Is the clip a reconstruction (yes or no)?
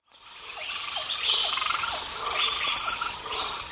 no